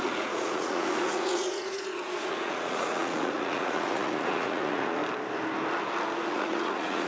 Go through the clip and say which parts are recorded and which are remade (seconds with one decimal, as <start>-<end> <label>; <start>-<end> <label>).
0.0-5.0 remade; 5.0-6.3 recorded; 6.3-7.1 remade